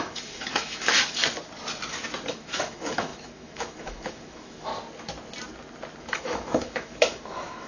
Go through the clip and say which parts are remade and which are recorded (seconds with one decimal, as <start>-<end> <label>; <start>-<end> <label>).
0.0-1.2 remade; 1.2-2.3 recorded; 2.3-4.7 remade; 4.7-6.0 recorded; 6.0-7.7 remade